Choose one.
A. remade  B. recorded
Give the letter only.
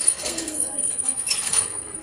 A